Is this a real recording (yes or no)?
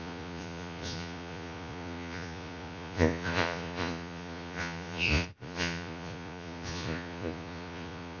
no